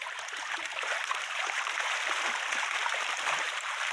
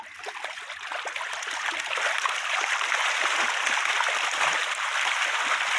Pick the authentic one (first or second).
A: second